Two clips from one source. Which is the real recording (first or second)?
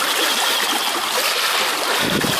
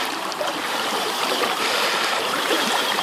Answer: first